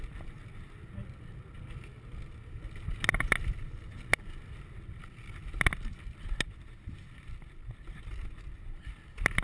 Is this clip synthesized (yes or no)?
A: no